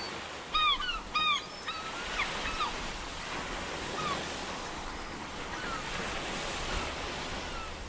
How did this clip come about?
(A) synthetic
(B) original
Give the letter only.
B